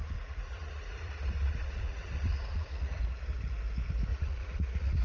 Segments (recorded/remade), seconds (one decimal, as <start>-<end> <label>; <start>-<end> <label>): 0.0-3.0 remade; 3.0-4.1 recorded; 4.1-5.0 remade